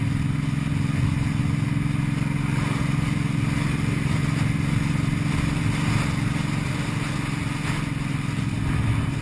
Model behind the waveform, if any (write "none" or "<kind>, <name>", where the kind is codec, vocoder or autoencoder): none